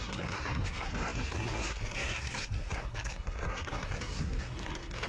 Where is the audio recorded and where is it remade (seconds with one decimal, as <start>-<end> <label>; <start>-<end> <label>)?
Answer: 0.0-5.1 remade